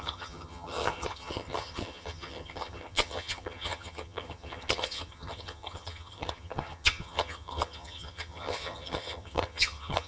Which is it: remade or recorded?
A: remade